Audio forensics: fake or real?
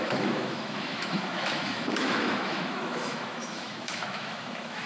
fake